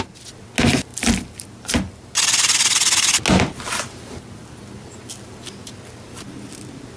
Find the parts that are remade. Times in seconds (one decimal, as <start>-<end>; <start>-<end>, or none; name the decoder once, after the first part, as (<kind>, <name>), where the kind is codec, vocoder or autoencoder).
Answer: none